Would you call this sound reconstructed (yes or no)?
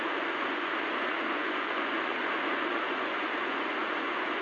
yes